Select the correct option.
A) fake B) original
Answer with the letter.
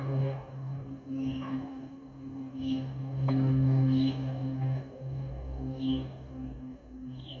A